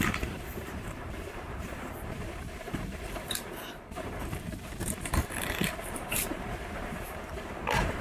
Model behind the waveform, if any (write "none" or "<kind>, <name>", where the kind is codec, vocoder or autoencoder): vocoder, BigVGAN v2